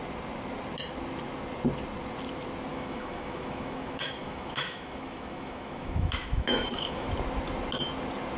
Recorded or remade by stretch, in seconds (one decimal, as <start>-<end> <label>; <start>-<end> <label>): 0.0-2.7 recorded; 2.7-7.1 remade; 7.1-8.4 recorded